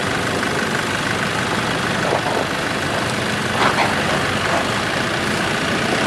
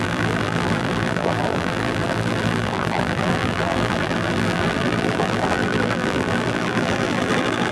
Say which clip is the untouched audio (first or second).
first